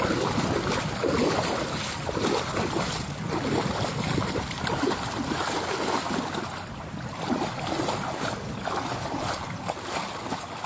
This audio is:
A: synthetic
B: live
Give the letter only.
B